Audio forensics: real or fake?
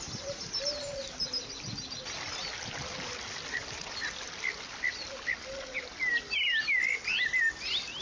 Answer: real